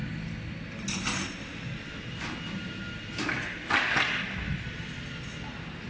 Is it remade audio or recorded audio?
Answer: recorded